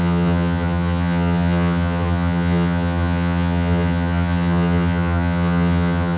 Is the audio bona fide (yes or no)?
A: no